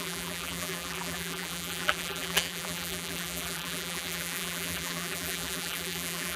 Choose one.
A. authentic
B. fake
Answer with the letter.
B